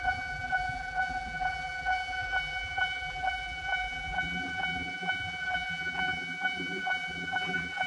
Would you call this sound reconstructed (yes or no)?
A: yes